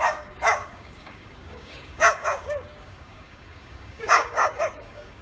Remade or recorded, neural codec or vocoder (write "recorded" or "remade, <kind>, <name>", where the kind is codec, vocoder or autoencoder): remade, codec, DAC